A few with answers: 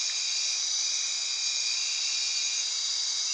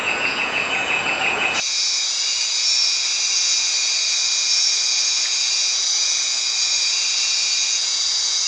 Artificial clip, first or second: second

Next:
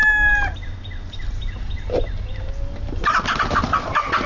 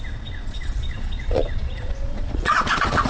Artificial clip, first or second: second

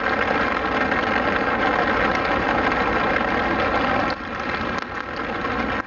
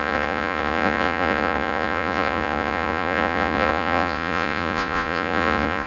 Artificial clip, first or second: second